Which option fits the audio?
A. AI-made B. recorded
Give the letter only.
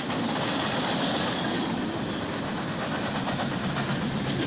B